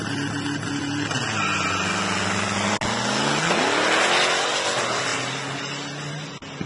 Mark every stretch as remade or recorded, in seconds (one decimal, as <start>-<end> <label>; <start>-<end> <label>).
0.0-6.7 recorded